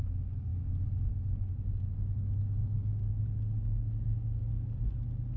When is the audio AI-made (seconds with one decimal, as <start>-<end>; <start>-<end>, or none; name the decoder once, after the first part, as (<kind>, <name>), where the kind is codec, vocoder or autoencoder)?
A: 4.4-4.9 (codec, DAC)